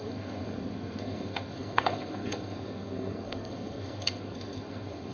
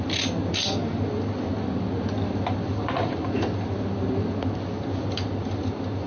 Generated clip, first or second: first